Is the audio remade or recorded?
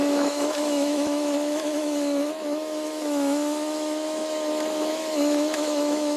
remade